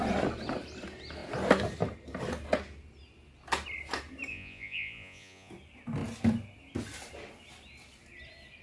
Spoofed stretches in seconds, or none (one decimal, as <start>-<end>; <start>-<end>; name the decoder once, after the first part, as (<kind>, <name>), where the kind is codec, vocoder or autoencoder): 4.3-5.5 (vocoder, Vocos)